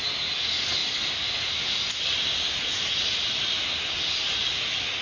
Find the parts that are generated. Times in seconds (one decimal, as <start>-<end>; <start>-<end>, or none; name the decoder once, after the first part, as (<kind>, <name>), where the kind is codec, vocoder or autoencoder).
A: none